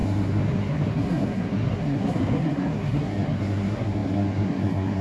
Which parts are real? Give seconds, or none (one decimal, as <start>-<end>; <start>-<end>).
none